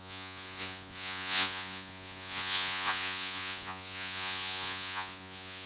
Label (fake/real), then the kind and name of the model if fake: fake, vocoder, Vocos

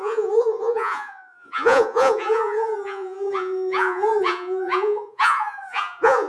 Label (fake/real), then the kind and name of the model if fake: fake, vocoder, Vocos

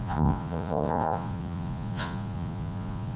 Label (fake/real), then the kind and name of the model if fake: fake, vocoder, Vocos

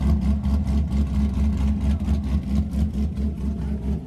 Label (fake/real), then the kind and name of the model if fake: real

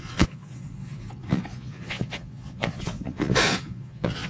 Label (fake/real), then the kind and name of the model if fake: fake, vocoder, Vocos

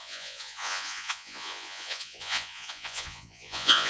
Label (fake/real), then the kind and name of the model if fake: fake, vocoder, Vocos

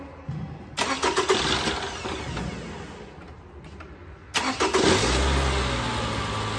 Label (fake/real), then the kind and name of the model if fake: real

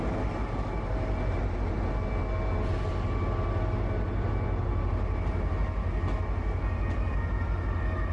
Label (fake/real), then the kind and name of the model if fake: real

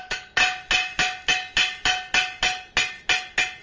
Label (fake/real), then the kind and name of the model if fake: real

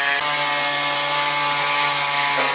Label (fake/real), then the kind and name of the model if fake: real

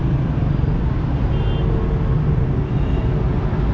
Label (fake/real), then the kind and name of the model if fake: real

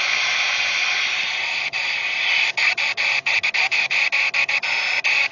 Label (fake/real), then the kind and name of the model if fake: real